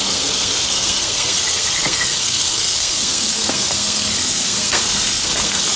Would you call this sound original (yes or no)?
no